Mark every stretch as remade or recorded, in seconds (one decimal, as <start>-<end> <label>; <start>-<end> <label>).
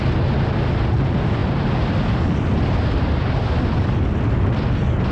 0.0-5.1 recorded